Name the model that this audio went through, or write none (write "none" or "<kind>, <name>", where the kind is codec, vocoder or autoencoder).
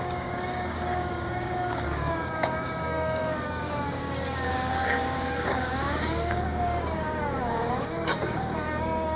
codec, DAC